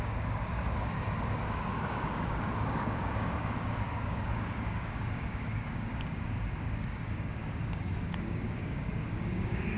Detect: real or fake fake